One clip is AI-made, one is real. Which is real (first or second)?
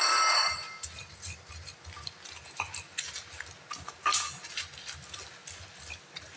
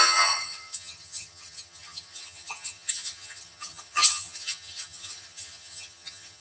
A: first